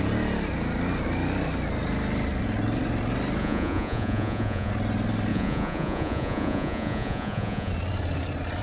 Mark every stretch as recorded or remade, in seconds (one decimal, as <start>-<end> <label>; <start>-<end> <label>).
0.0-3.4 recorded; 3.4-4.7 remade; 4.7-5.3 recorded; 5.3-7.7 remade; 7.7-8.6 recorded